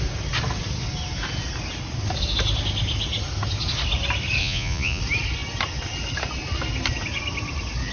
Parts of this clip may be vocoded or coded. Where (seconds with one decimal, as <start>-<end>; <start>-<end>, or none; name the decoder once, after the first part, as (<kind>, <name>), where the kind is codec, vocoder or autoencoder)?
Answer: 4.4-5.0 (vocoder, Vocos)